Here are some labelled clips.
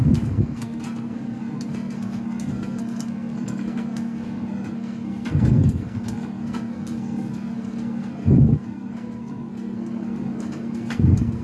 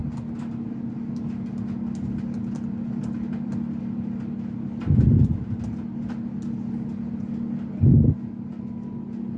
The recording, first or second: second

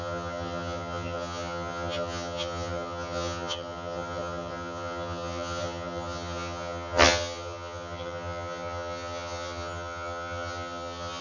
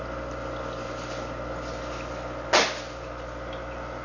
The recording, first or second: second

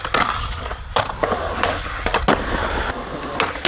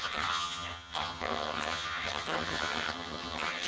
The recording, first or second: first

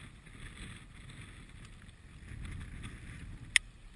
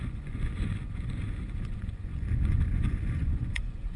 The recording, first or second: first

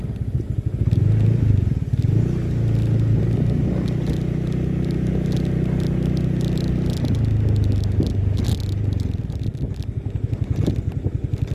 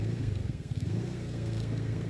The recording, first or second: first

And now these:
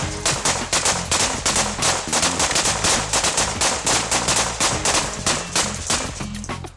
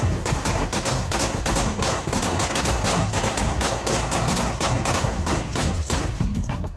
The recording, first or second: first